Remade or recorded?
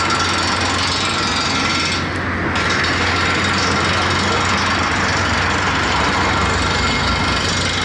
recorded